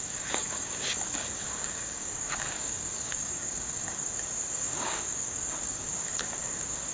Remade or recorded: remade